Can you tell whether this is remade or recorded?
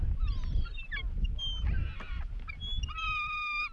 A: recorded